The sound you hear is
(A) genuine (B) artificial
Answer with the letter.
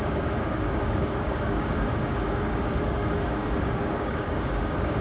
B